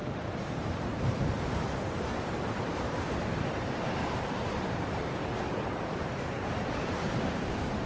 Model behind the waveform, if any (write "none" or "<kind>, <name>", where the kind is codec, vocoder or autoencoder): vocoder, BigVGAN v2